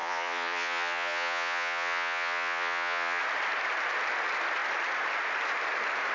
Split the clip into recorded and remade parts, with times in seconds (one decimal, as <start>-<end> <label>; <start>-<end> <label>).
0.0-3.2 remade; 3.2-6.1 recorded